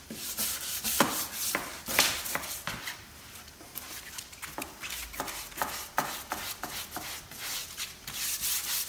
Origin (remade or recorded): recorded